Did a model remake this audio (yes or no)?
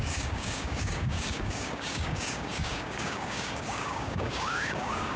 yes